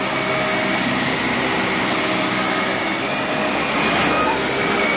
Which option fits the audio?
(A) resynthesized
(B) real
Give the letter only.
B